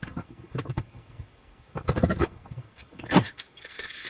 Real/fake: fake